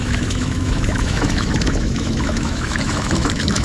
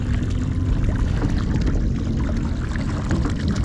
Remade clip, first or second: first